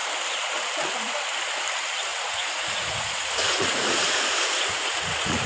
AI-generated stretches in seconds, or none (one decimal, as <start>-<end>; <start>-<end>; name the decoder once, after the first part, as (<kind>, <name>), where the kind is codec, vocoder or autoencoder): 2.1-5.5 (vocoder, Vocos)